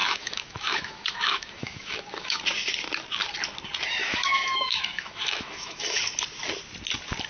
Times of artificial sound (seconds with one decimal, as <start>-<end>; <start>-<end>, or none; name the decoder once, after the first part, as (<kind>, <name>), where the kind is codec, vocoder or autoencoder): 0.0-2.4 (autoencoder, DAC-VAE); 4.0-6.0